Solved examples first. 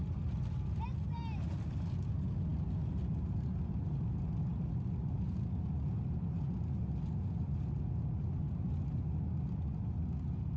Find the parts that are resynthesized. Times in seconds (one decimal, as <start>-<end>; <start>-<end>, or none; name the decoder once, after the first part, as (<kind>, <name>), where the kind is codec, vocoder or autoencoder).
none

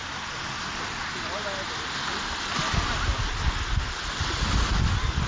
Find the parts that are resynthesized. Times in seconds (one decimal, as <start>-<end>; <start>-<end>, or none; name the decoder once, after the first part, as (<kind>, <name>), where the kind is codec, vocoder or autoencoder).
none

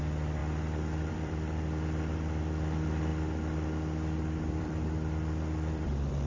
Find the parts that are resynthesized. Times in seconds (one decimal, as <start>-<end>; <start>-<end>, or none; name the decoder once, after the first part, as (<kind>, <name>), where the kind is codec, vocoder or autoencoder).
0.0-0.4 (vocoder, BigVGAN v2); 1.1-3.1; 4.5-6.3